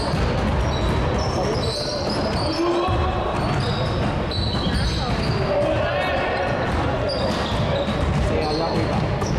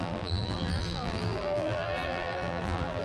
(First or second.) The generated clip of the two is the second